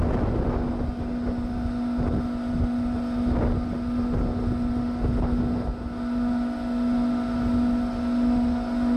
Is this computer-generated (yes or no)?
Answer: no